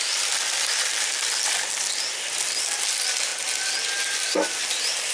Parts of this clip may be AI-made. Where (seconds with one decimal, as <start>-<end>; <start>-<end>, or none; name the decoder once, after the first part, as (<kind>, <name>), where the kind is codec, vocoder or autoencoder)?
none